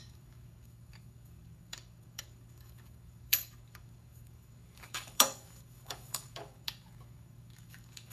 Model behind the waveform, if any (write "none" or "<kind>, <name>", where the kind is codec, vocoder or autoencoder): codec, DAC